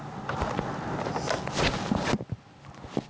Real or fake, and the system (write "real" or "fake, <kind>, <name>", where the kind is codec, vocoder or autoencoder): real